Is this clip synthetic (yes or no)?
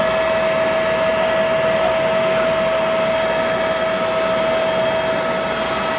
no